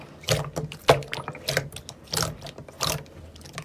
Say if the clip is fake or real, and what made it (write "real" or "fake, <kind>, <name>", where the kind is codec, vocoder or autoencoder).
real